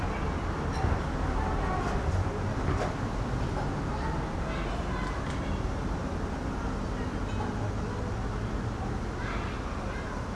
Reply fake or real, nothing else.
real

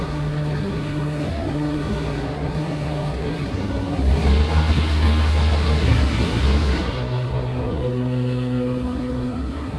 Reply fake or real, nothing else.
fake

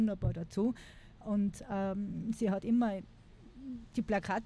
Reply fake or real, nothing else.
real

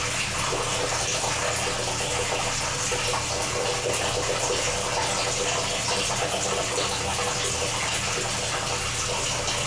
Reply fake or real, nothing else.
real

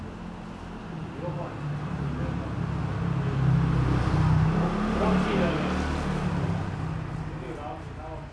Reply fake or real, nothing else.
real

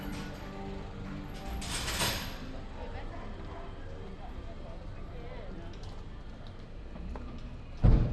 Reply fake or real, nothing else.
real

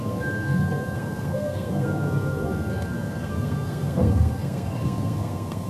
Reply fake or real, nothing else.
fake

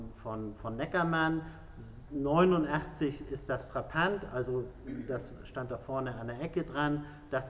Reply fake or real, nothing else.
real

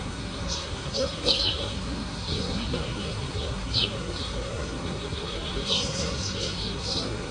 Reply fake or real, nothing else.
fake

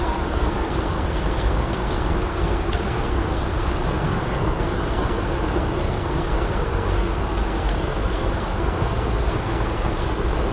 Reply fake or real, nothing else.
fake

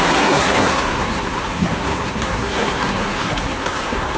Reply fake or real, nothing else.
fake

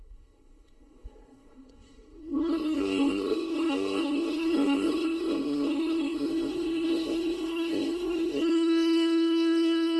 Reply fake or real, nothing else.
fake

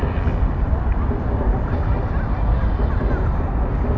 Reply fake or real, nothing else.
real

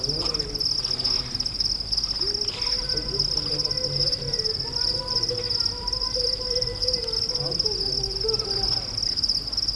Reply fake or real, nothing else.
real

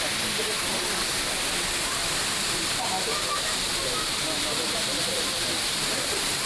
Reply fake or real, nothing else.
real